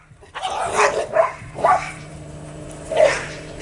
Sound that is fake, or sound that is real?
fake